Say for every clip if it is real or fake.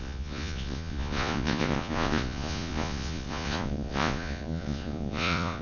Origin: fake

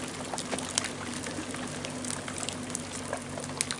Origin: real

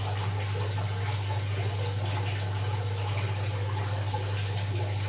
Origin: real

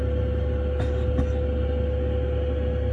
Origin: real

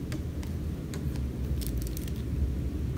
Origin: real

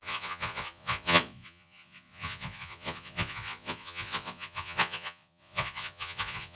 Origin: fake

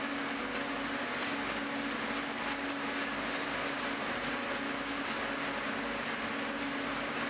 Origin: real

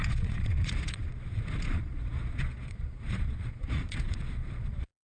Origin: fake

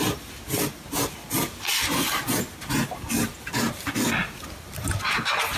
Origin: real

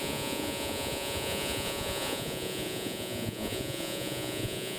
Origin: fake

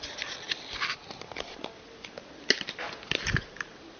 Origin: real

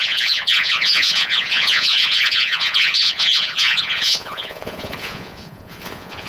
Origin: fake